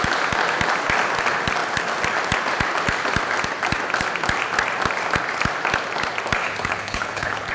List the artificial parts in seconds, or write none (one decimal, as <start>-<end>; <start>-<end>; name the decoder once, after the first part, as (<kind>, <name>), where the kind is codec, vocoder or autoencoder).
6.4-7.5 (codec, HILCodec)